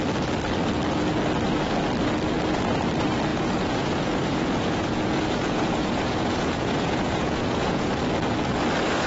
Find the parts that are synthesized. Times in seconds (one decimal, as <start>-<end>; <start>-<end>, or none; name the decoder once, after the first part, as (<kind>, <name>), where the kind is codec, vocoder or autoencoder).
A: 3.3-8.0 (vocoder, Vocos)